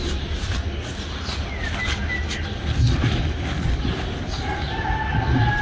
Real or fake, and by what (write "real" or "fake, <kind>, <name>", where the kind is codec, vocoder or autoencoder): real